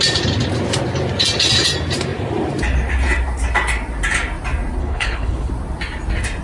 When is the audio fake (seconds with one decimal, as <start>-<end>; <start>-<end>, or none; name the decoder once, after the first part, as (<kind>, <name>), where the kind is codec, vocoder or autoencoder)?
4.8-5.5 (codec, HILCodec)